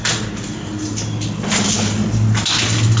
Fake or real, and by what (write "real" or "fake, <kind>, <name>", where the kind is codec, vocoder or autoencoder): real